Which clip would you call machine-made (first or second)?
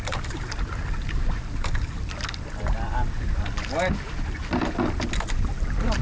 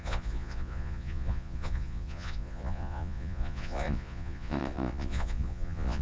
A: second